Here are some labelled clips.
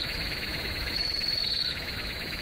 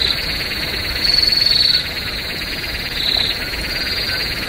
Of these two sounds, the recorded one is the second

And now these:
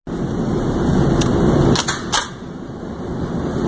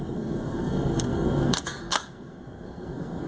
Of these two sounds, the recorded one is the first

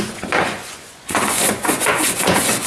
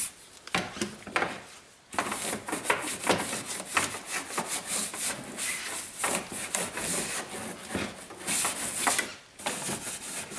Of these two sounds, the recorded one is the second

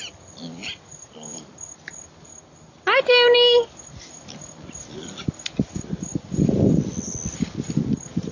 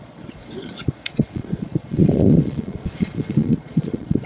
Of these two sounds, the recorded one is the first